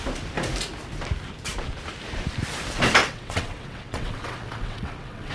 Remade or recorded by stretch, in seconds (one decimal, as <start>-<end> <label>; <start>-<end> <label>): 0.0-3.0 recorded; 3.0-5.3 remade